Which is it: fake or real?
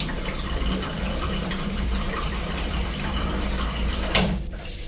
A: fake